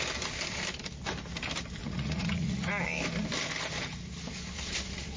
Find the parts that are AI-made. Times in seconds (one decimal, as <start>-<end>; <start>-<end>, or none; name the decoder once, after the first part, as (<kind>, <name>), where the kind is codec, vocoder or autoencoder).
1.8-2.7 (vocoder, Vocos)